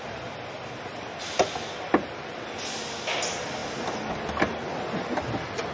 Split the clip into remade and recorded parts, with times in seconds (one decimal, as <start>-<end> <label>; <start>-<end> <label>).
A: 0.0-5.7 recorded